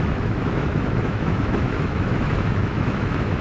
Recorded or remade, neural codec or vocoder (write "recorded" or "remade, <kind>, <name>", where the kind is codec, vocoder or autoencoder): remade, autoencoder, DAC-VAE